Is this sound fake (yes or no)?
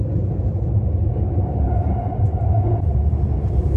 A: no